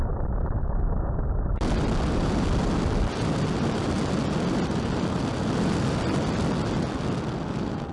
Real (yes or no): yes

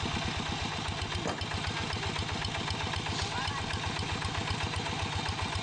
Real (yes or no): yes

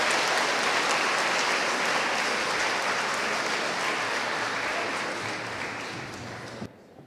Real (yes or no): yes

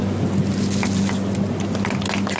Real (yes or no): yes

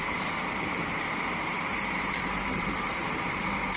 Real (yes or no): no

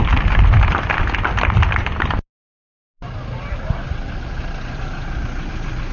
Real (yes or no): yes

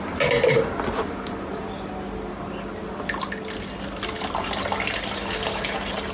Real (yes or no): yes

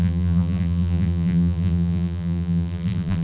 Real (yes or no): no